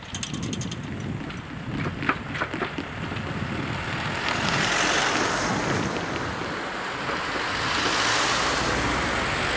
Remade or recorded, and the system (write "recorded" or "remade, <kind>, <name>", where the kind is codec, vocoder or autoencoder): recorded